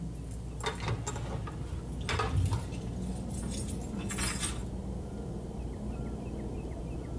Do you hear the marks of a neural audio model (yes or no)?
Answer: no